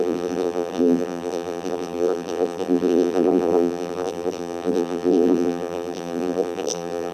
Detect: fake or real fake